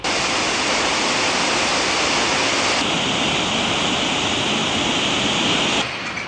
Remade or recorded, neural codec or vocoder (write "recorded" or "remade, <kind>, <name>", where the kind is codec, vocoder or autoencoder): recorded